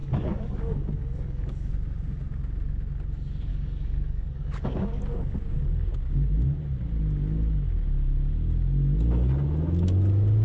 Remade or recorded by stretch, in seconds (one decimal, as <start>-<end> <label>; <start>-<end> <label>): 0.0-1.7 remade; 1.7-3.5 recorded; 3.5-5.0 remade; 5.0-10.4 recorded